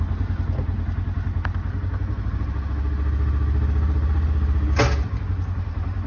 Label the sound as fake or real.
real